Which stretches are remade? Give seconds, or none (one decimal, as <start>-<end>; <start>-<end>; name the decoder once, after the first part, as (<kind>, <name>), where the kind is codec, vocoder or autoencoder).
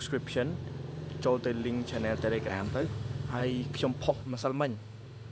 2.5-3.4 (autoencoder, DAC-VAE); 4.1-5.3